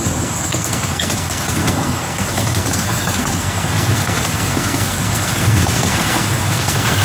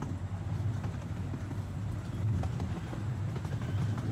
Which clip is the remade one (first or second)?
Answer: first